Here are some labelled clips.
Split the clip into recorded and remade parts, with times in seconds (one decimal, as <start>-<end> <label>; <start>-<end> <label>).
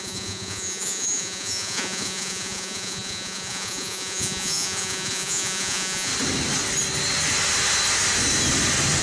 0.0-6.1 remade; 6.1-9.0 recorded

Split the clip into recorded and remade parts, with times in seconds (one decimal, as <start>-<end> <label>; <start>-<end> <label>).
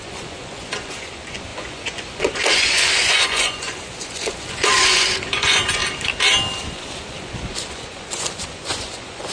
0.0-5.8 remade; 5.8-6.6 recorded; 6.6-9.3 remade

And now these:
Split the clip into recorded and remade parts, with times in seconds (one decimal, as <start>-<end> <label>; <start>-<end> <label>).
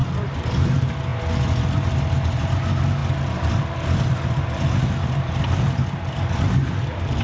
0.0-7.2 recorded